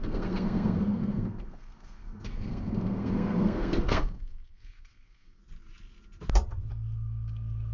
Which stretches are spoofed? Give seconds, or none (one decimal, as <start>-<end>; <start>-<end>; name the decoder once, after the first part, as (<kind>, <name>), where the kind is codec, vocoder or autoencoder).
0.0-5.4 (codec, SNAC); 6.7-7.7